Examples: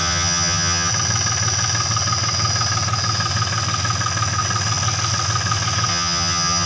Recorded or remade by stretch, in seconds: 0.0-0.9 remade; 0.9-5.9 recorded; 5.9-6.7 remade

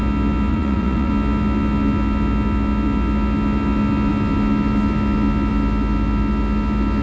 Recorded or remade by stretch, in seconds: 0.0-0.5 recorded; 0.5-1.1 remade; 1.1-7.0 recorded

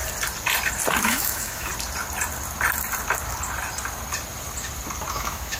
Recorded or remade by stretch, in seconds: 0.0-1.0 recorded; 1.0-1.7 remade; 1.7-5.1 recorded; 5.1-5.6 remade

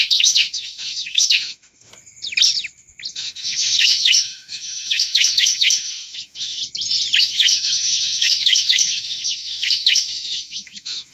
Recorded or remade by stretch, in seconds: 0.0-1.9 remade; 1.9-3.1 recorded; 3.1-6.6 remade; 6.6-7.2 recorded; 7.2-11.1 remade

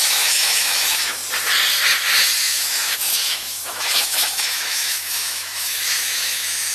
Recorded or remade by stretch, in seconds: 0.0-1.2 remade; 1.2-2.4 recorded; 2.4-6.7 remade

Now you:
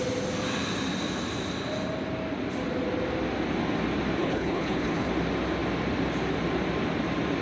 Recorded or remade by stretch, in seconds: 0.0-4.2 recorded; 4.2-5.1 remade; 5.1-7.4 recorded

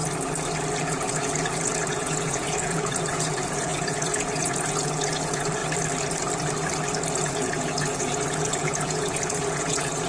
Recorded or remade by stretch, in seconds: 0.0-0.8 recorded; 0.8-5.6 remade; 5.6-7.1 recorded; 7.1-10.1 remade